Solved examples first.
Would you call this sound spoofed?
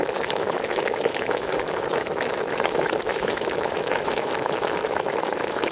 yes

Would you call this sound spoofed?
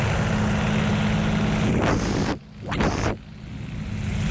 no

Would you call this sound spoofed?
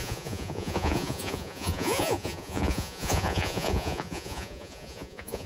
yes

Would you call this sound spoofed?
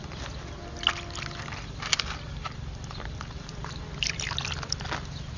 no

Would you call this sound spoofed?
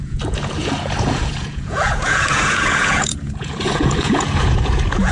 yes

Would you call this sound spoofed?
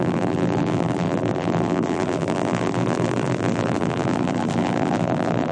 yes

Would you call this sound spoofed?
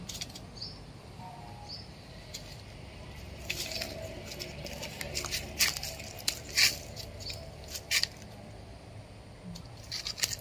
no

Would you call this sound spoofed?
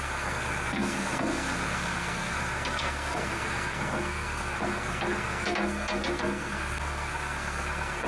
yes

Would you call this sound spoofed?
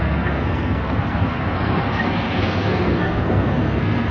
yes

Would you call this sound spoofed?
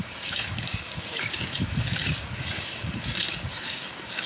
yes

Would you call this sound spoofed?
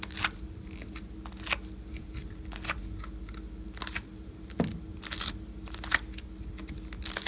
no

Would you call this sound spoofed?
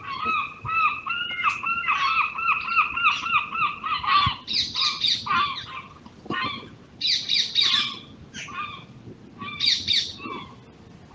no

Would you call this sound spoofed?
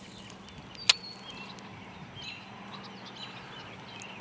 no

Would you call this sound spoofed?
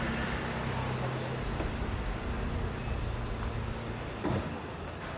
no